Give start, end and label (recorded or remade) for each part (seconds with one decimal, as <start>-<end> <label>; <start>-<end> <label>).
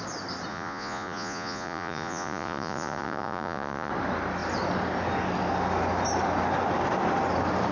0.0-0.5 recorded; 0.5-3.9 remade; 3.9-7.7 recorded